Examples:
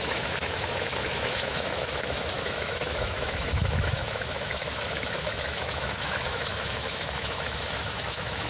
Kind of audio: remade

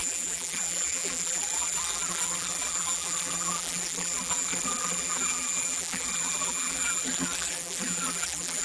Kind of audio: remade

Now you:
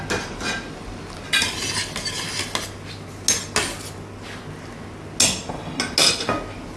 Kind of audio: recorded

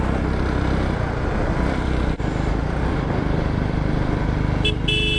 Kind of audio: recorded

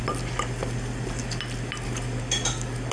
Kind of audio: recorded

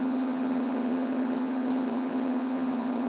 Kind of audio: remade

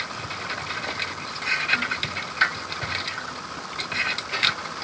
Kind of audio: recorded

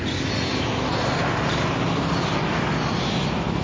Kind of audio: recorded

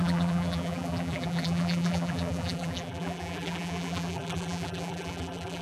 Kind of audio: remade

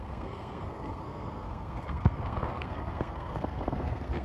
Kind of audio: remade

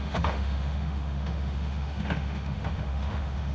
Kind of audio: remade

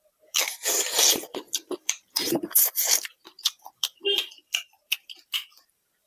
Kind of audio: remade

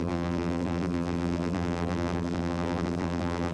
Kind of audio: remade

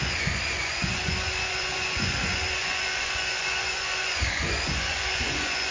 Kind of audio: remade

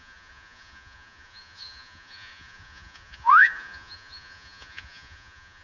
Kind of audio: remade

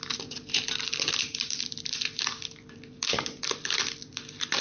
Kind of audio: remade